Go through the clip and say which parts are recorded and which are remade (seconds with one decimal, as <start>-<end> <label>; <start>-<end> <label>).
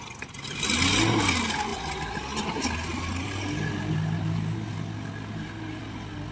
0.0-6.3 recorded